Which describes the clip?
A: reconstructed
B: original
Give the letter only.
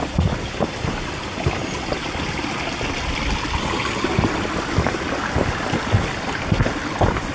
B